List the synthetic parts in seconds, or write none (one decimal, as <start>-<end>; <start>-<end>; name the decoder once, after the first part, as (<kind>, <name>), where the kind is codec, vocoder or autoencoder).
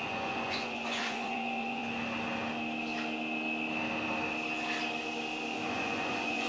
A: 0.0-1.8 (vocoder, Vocos); 5.7-6.5